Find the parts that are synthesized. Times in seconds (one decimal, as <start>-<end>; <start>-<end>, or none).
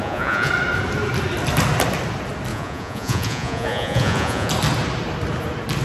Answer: 0.0-0.5; 2.5-4.5